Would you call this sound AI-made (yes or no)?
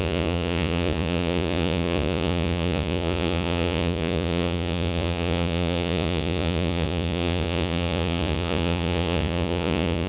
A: yes